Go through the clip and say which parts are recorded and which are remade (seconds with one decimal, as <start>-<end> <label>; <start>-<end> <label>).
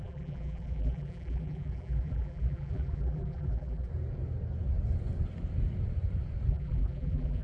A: 0.0-3.9 remade; 3.9-6.5 recorded; 6.5-7.4 remade